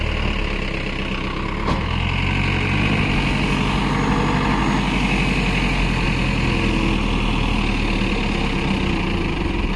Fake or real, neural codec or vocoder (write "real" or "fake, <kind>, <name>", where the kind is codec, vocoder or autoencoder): real